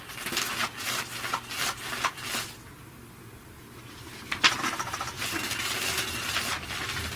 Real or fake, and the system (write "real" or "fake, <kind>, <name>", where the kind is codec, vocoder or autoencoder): real